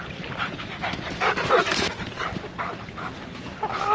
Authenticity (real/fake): real